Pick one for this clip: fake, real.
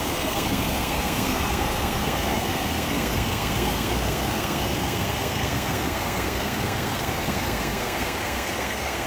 fake